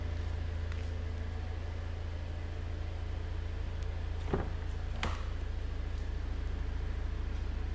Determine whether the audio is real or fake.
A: real